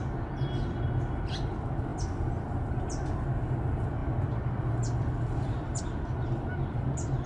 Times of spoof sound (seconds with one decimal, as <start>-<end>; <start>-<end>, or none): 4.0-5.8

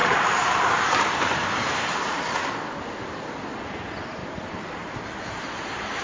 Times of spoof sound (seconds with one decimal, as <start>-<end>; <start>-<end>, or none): 0.0-3.4; 4.2-6.0

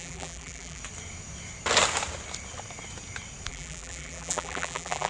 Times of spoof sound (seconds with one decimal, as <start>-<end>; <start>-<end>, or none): 0.0-0.8; 3.5-5.1

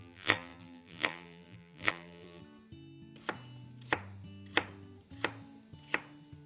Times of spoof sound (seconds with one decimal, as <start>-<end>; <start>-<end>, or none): 0.0-2.4

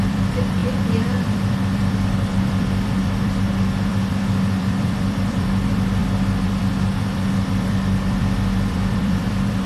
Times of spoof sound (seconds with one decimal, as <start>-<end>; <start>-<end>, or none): 0.0-9.7